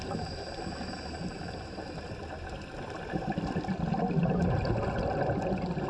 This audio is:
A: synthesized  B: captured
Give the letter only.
B